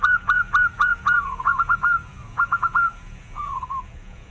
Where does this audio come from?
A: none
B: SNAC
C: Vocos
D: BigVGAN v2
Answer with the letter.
C